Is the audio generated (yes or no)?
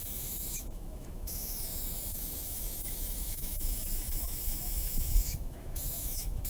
yes